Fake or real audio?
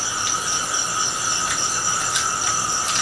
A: real